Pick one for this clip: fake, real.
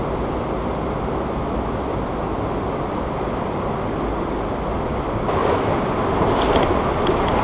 real